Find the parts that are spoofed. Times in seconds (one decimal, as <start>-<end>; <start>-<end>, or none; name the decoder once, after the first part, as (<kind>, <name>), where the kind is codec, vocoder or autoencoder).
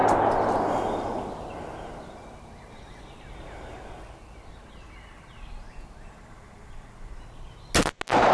0.0-0.8 (vocoder, BigVGAN v2)